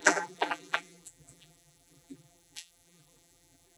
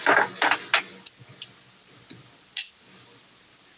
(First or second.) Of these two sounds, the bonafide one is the second